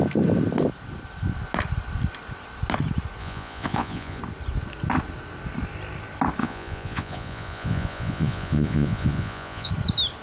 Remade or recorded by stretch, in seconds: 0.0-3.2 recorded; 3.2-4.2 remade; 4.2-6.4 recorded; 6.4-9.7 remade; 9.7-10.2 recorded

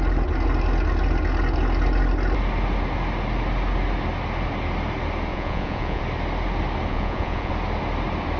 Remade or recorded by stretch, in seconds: 0.0-5.3 recorded; 5.3-6.0 remade; 6.0-6.9 recorded; 6.9-7.5 remade; 7.5-8.4 recorded

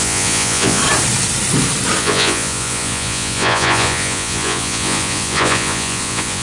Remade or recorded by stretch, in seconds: 0.0-0.8 remade; 0.8-2.0 recorded; 2.0-6.4 remade